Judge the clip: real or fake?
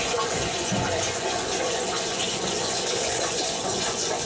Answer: fake